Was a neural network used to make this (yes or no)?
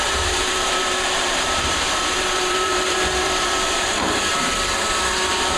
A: yes